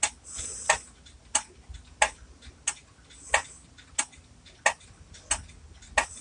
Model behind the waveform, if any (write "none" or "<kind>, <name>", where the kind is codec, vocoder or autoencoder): none